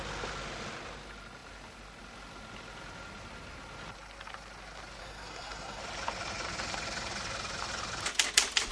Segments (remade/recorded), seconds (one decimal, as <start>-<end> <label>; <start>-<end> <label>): 0.0-5.0 recorded; 5.0-5.8 remade; 5.8-8.7 recorded